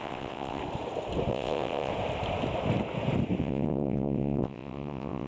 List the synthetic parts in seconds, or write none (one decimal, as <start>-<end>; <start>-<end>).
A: 0.0-0.6; 1.3-1.9; 3.4-5.3